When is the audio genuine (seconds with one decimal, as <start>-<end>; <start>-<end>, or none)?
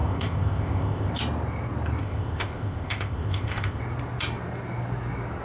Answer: 1.1-2.0; 3.8-5.4